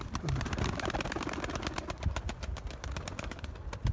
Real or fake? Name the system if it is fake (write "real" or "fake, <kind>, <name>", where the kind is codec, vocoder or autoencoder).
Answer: real